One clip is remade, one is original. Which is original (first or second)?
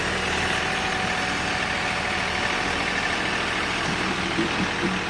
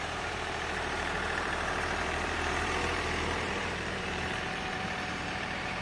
first